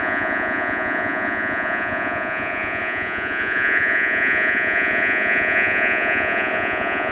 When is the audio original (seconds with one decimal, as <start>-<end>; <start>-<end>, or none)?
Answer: none